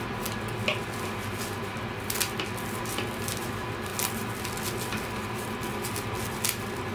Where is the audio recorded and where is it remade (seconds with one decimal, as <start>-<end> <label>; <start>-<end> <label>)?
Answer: 0.0-6.9 recorded